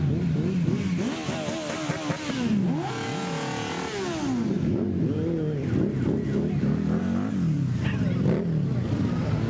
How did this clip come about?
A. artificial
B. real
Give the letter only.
B